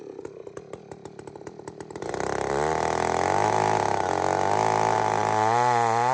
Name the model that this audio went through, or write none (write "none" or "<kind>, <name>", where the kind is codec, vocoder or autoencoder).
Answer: none